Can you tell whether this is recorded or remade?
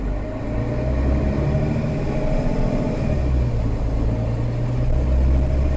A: recorded